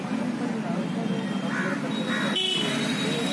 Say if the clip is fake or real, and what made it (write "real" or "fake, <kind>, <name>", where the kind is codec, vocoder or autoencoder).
real